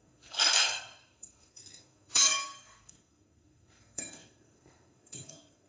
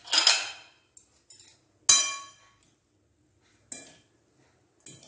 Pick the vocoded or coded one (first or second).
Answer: first